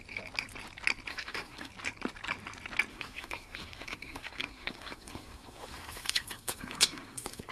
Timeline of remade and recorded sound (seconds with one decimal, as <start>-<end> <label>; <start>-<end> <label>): 0.0-1.1 recorded; 1.1-1.7 remade; 1.7-2.9 recorded; 2.9-7.5 remade